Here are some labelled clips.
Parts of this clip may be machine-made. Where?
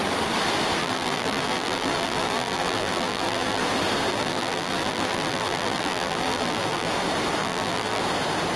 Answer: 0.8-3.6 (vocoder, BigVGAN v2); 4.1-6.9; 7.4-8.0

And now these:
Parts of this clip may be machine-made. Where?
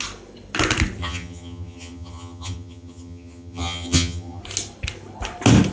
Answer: 1.0-4.4 (vocoder, HiFi-GAN)